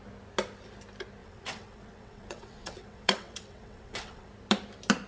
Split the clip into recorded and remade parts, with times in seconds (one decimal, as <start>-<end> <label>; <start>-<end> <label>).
0.0-1.2 recorded; 1.2-4.3 remade; 4.3-5.1 recorded